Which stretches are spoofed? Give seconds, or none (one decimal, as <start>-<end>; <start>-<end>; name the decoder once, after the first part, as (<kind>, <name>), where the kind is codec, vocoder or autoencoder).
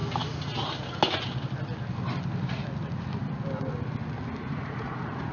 4.4-5.3 (vocoder, Vocos)